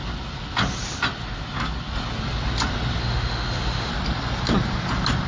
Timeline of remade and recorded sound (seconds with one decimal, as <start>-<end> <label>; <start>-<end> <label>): 0.0-3.0 recorded; 3.0-3.9 remade; 3.9-5.3 recorded